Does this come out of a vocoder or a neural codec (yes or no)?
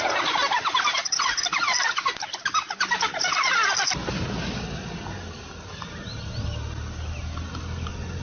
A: no